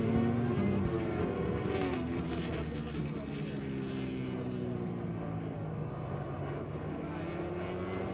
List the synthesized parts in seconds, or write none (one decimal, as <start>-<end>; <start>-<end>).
none